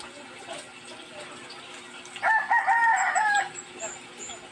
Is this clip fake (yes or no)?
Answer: no